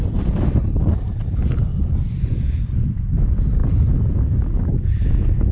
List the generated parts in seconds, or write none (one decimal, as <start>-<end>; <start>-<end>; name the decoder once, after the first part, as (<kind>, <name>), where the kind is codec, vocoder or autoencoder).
1.7-3.0 (vocoder, Vocos)